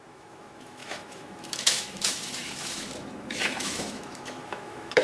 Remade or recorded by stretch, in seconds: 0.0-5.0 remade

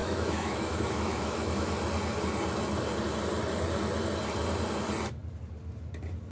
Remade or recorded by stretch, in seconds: 0.0-1.7 remade; 1.7-6.3 recorded

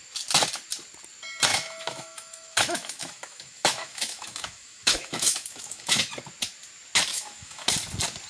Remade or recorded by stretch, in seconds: 0.0-1.5 recorded; 1.5-6.1 remade; 6.1-7.1 recorded; 7.1-7.7 remade; 7.7-8.3 recorded

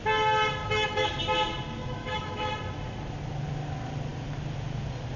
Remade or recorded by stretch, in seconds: 0.0-0.6 recorded; 0.6-1.2 remade; 1.2-1.8 recorded; 1.8-2.5 remade; 2.5-5.2 recorded

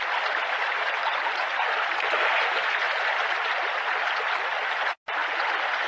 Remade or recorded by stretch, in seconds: 0.0-5.9 recorded